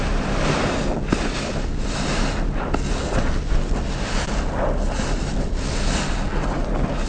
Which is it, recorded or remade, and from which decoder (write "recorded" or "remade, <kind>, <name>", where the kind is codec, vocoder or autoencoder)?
recorded